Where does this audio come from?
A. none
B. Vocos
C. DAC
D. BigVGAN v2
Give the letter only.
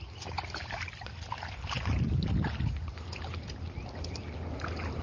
A